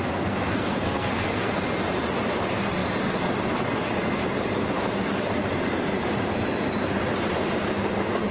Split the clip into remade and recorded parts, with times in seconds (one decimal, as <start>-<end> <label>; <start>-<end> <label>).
0.0-1.6 remade; 1.6-8.3 recorded